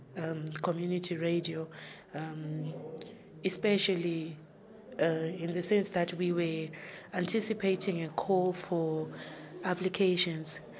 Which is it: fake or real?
real